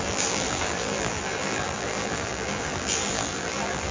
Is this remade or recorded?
remade